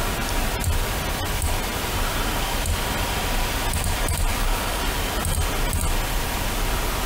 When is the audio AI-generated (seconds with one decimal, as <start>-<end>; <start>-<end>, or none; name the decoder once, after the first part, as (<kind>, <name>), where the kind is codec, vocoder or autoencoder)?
4.3-4.8 (codec, DAC)